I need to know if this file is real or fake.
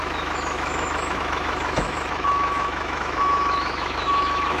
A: fake